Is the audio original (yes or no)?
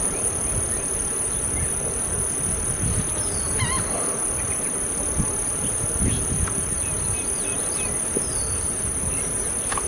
yes